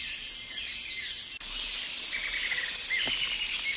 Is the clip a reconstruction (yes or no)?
no